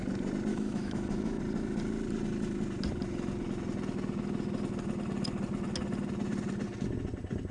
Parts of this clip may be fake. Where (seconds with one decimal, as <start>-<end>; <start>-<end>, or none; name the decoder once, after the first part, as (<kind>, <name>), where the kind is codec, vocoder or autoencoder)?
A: 0.5-1.4 (autoencoder, DAC-VAE)